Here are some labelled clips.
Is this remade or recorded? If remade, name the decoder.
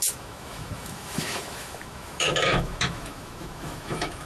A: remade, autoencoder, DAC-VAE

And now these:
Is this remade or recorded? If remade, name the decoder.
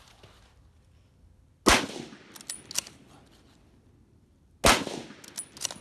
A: recorded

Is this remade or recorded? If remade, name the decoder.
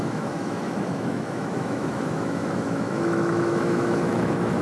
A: remade, autoencoder, DAC-VAE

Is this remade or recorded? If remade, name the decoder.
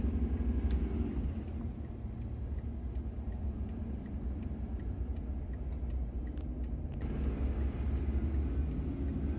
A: recorded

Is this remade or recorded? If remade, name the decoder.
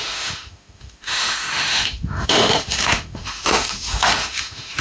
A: remade, autoencoder, DAC-VAE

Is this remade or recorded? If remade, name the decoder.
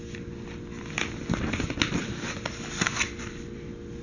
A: recorded